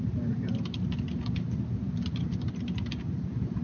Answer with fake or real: real